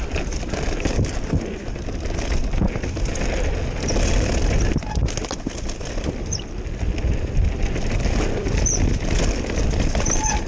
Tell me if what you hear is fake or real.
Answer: real